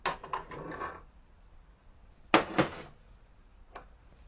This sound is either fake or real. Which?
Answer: real